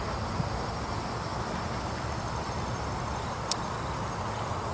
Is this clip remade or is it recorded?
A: recorded